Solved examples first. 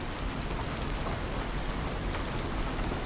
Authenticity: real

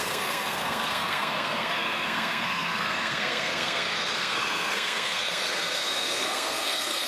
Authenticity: fake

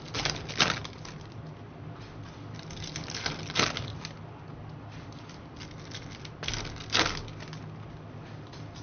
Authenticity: real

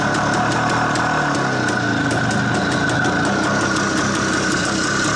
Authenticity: real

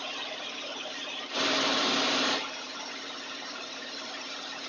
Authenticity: fake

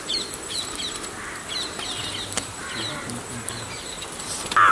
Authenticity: real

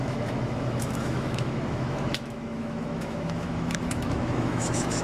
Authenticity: fake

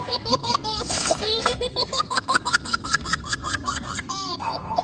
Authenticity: fake